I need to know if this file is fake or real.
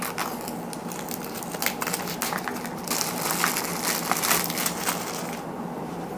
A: real